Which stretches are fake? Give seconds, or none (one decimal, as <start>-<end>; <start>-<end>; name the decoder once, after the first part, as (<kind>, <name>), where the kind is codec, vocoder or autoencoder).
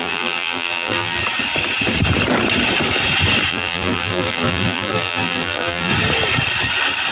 0.0-1.2 (vocoder, BigVGAN v2); 3.5-5.9